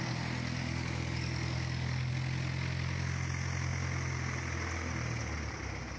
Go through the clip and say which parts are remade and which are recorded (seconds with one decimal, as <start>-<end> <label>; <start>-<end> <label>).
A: 0.0-0.6 recorded; 0.6-2.1 remade; 2.1-6.0 recorded